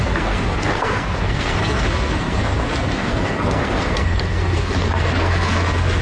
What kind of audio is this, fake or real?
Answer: fake